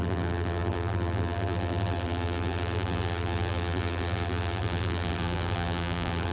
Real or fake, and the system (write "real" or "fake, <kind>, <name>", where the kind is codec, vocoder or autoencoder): fake, vocoder, BigVGAN v2